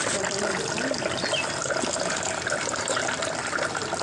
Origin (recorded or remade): recorded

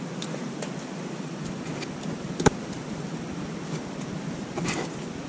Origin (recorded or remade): recorded